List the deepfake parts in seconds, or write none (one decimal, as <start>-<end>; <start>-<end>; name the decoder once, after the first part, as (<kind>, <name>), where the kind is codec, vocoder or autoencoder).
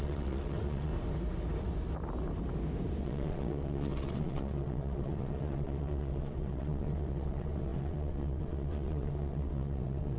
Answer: 0.0-0.9 (vocoder, WaveNeXt); 3.0-10.2